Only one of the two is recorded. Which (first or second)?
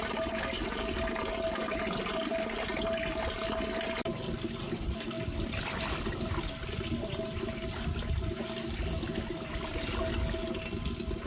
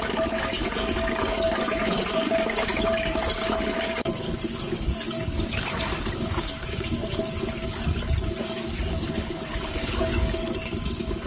first